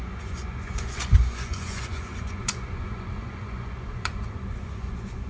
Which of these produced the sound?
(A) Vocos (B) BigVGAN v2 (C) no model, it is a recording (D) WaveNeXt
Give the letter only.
A